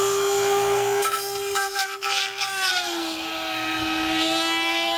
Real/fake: fake